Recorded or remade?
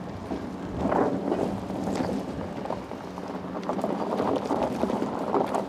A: recorded